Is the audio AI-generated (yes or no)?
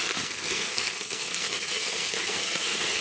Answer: yes